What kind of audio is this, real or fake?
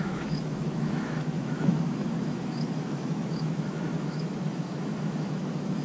fake